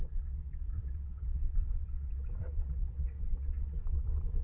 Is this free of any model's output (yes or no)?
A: no